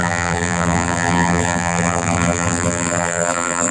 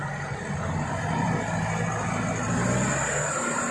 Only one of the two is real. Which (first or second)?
second